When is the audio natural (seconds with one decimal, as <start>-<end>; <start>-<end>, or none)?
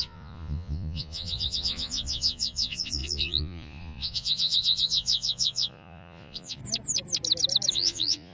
6.6-7.7